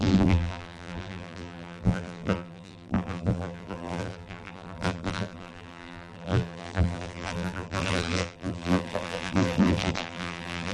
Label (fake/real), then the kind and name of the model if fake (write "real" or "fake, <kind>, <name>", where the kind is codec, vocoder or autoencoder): fake, vocoder, BigVGAN v2